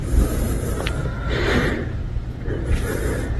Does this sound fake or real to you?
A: real